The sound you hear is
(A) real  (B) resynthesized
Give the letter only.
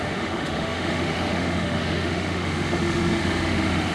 B